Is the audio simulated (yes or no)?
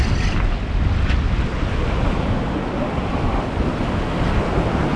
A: no